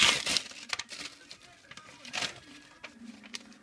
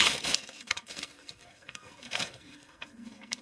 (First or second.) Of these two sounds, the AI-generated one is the second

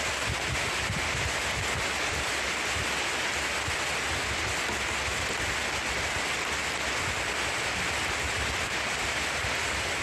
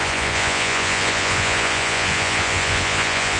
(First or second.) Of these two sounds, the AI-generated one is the second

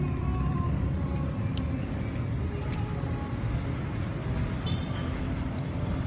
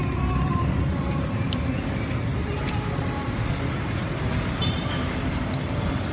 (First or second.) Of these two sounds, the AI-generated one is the second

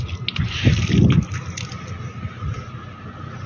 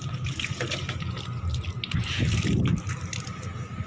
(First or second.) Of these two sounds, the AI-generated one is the second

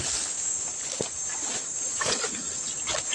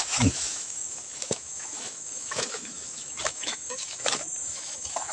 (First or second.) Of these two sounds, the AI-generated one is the second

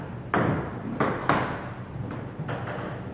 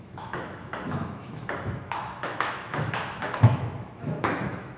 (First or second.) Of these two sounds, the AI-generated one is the second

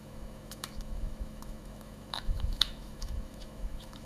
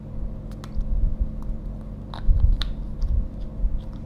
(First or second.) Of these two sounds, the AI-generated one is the first